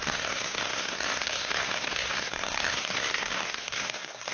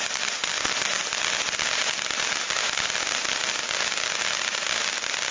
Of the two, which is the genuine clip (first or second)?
second